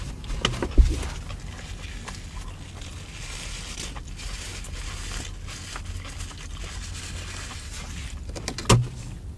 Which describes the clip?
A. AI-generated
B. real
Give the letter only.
B